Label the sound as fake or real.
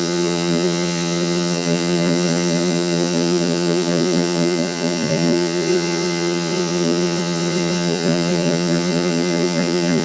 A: fake